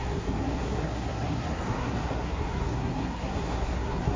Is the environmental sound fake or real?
fake